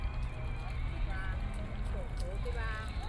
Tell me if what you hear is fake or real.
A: real